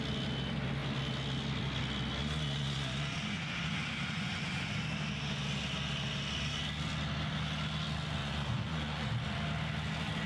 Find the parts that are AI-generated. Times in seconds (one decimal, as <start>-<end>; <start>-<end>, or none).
2.2-4.7; 8.2-9.1